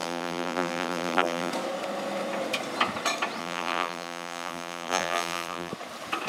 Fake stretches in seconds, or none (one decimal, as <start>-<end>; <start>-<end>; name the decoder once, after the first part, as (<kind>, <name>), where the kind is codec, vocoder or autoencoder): 0.0-1.5 (vocoder, BigVGAN v2); 3.4-5.7